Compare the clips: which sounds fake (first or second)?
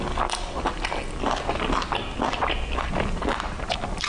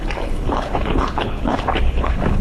second